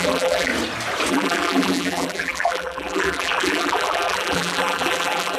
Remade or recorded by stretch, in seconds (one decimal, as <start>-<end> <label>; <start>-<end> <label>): 0.0-0.5 remade; 0.5-1.1 recorded; 1.1-5.4 remade